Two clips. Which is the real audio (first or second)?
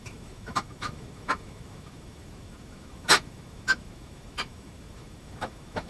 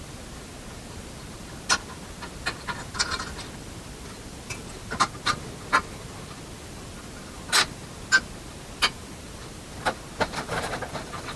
second